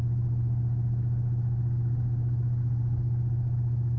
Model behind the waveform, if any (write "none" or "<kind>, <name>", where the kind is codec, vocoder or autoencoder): none